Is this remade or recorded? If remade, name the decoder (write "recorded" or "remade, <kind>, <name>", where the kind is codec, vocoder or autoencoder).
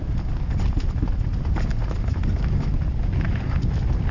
recorded